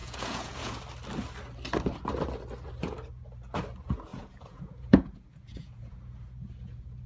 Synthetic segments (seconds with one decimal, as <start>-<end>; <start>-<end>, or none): 0.0-0.8; 4.1-7.1